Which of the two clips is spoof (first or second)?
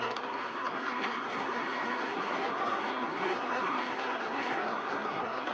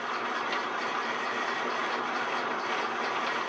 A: first